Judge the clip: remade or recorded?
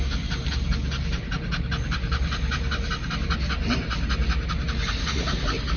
recorded